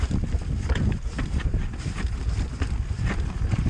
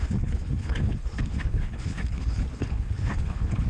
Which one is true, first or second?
first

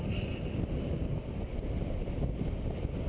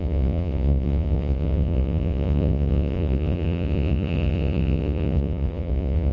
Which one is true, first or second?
first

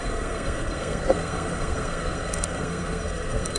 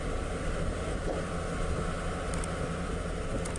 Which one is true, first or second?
second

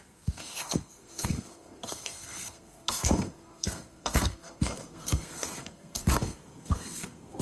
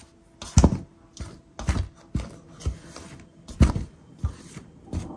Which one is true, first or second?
second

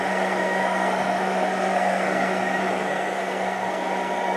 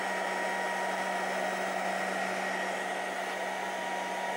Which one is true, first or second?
second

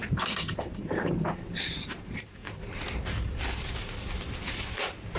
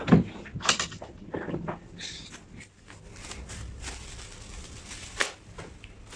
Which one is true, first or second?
second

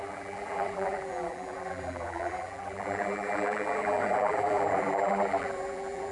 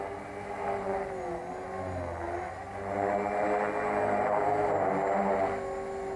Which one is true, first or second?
second